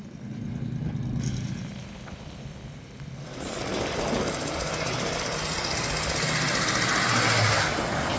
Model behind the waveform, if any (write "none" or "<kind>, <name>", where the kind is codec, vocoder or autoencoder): none